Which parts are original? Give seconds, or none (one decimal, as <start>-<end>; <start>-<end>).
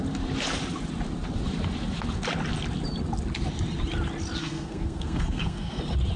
0.0-4.4; 5.8-6.2